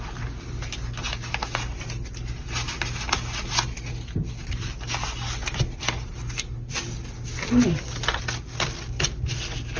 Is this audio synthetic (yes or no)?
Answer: no